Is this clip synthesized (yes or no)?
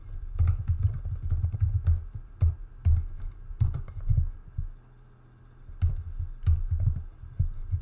no